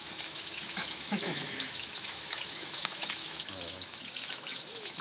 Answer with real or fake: fake